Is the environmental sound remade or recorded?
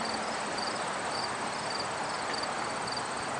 recorded